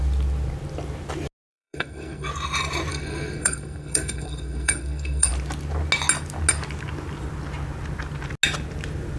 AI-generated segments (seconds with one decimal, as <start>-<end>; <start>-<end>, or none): 1.5-2.3; 2.9-5.3